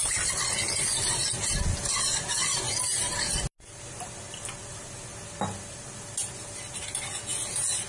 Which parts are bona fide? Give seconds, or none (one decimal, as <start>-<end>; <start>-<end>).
0.0-7.9